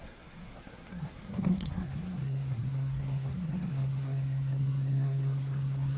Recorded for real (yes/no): no